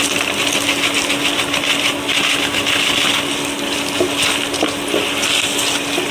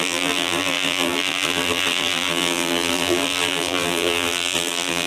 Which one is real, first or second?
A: first